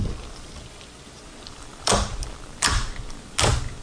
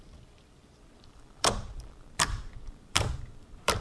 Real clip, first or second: first